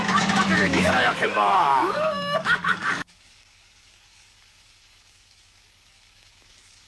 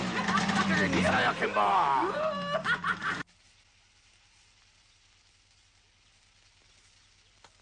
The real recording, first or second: second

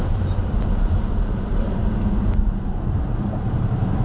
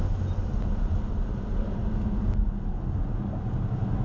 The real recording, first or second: second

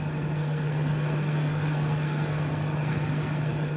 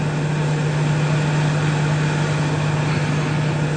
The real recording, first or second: second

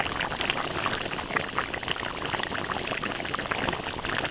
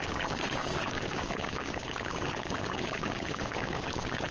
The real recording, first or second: first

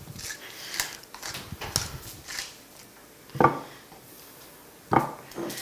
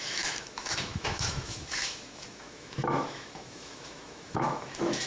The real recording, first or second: first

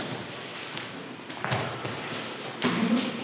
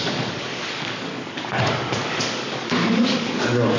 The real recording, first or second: first